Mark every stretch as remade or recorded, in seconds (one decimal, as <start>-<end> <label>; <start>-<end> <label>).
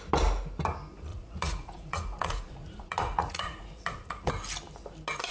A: 0.0-1.1 recorded; 1.1-4.3 remade; 4.3-5.3 recorded